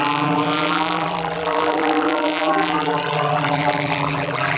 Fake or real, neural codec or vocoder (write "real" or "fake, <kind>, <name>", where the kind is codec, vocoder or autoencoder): fake, vocoder, BigVGAN v2